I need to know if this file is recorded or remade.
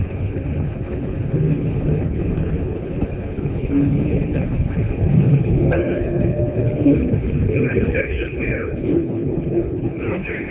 remade